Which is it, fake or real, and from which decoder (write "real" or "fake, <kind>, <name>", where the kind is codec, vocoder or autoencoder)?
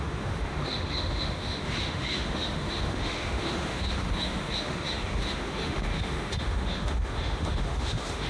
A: fake, autoencoder, DAC-VAE